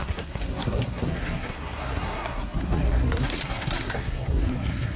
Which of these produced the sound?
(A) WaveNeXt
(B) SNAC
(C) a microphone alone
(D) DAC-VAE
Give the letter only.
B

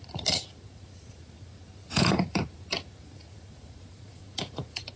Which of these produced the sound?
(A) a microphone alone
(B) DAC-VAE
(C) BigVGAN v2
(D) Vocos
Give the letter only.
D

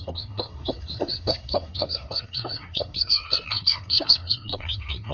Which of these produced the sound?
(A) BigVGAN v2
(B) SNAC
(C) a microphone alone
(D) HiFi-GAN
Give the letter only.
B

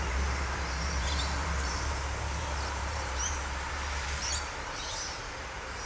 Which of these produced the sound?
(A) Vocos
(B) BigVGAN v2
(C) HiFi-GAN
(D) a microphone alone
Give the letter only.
B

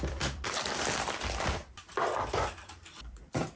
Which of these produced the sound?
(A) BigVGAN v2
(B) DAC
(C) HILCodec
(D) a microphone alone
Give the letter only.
A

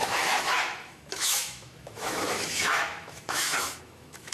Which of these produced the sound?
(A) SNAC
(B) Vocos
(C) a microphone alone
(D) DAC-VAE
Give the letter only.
D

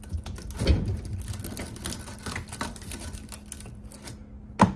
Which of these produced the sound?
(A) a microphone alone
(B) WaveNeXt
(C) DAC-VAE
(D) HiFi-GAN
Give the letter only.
A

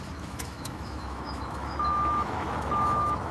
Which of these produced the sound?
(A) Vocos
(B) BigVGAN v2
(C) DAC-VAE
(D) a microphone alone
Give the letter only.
C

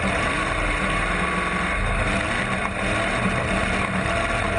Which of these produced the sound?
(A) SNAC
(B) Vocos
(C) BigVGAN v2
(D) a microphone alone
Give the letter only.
D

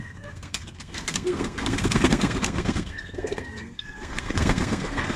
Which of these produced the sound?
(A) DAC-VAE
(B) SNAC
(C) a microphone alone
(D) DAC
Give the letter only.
B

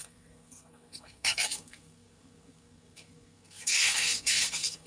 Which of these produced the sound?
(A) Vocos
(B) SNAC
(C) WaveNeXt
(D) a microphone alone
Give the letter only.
B